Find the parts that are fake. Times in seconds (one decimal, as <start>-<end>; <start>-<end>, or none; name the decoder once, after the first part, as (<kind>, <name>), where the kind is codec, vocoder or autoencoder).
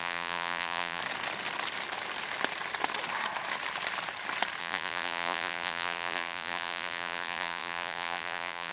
0.0-1.0 (vocoder, BigVGAN v2); 4.6-8.7